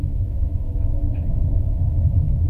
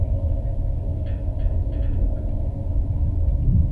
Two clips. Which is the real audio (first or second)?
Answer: second